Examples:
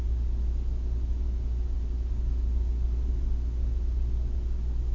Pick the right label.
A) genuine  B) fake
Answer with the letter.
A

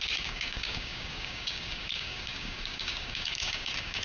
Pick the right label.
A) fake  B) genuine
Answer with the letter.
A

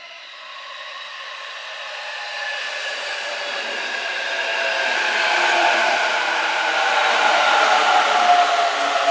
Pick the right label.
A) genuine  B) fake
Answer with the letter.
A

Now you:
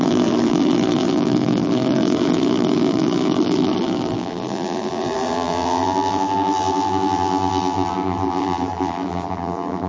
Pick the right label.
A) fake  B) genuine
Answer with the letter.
A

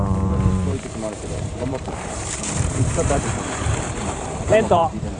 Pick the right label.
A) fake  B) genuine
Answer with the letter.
A